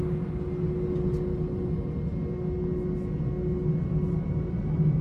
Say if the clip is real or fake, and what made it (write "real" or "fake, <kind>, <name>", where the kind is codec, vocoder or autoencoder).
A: real